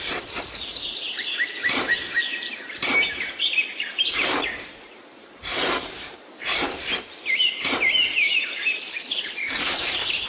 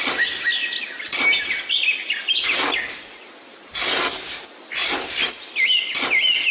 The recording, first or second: second